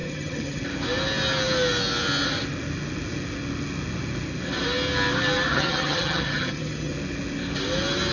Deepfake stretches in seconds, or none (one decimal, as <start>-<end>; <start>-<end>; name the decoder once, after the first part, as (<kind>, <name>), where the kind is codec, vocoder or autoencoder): 0.0-0.6 (vocoder, HiFi-GAN); 5.5-6.9